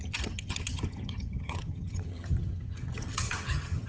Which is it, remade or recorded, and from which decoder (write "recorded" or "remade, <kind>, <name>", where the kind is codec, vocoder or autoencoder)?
remade, vocoder, HiFi-GAN